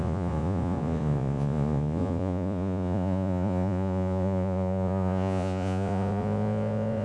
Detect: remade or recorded remade